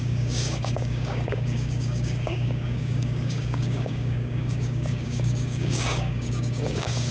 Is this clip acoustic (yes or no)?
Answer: no